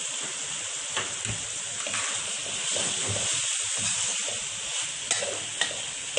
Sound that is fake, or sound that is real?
real